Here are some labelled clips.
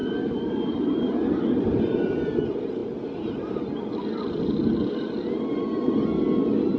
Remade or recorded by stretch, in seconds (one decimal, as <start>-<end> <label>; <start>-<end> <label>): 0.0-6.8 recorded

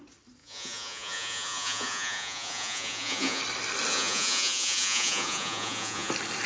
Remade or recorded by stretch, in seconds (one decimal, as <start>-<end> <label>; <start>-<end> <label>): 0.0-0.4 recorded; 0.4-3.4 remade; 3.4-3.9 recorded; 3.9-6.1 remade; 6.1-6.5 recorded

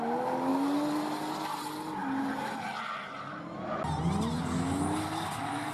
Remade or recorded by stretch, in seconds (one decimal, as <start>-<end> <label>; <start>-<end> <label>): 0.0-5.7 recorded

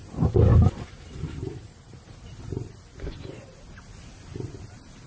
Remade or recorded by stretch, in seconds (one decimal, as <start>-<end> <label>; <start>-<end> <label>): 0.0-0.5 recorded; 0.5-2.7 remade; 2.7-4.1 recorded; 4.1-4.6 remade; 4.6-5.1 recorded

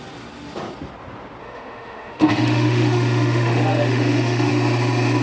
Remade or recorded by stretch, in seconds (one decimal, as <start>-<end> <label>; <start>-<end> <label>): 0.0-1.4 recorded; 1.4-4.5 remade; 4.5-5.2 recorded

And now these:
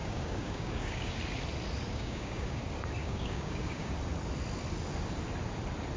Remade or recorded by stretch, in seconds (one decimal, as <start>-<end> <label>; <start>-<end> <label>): 0.0-1.2 remade; 1.2-1.9 recorded; 1.9-2.6 remade; 2.6-3.0 recorded; 3.0-3.9 remade; 3.9-6.0 recorded

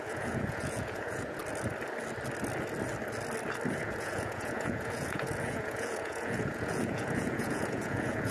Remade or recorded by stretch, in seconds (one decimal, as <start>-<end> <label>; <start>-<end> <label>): 0.0-1.4 remade; 1.4-3.8 recorded; 3.8-8.3 remade